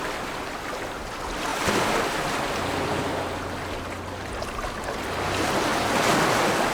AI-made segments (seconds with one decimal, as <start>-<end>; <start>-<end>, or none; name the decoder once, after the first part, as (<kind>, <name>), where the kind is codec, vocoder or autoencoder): none